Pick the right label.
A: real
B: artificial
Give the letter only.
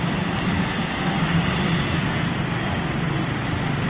A